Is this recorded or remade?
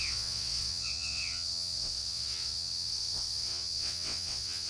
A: remade